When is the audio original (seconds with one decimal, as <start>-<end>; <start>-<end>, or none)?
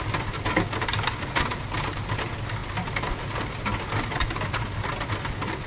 0.0-5.7